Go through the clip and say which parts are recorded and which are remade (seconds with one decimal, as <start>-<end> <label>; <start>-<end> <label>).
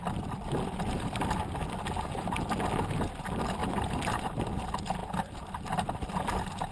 0.0-3.6 recorded; 3.6-4.4 remade; 4.4-6.7 recorded